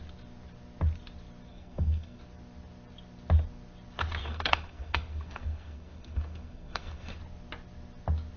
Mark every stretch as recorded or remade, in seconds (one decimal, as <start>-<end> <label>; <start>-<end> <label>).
0.0-1.5 recorded; 1.5-2.2 remade; 2.2-4.2 recorded; 4.2-7.2 remade; 7.2-8.4 recorded